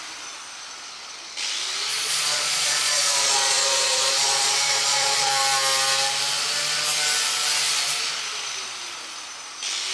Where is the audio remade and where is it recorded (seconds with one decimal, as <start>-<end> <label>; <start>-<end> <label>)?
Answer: 0.0-1.9 recorded; 1.9-5.3 remade; 5.3-9.9 recorded